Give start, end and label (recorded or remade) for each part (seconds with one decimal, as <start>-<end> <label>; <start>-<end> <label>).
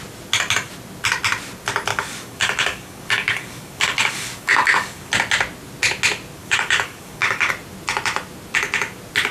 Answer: 0.0-1.9 recorded; 1.9-5.1 remade; 5.1-6.4 recorded; 6.4-7.5 remade; 7.5-9.3 recorded